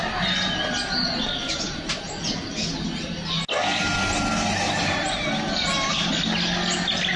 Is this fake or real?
real